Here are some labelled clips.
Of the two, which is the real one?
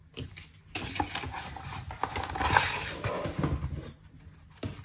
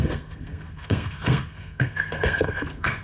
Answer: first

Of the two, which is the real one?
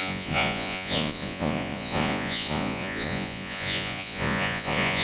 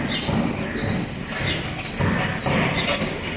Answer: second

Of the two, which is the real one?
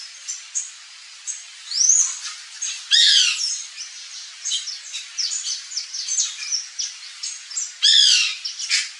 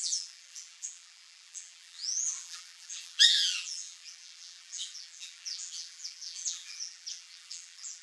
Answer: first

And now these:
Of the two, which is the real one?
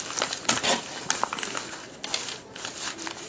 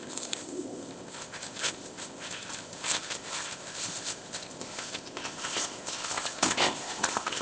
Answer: first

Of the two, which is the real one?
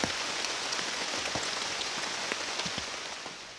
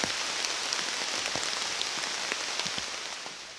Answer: second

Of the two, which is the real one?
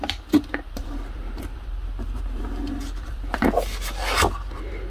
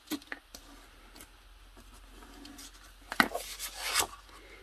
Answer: second